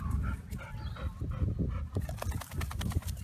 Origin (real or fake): real